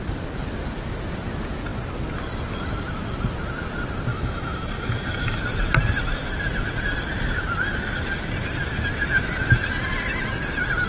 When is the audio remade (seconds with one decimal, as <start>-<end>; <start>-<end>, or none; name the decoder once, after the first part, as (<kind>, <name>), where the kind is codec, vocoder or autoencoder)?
4.1-5.4 (autoencoder, DAC-VAE)